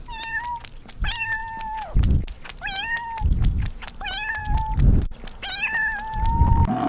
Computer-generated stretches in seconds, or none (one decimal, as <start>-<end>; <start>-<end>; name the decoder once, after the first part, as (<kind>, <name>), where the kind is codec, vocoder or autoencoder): none